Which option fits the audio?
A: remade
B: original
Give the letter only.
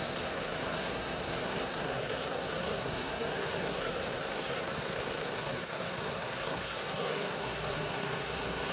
A